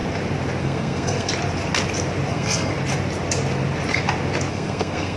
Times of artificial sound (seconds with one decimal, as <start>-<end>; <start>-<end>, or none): 0.6-1.3; 2.3-2.7; 4.5-5.2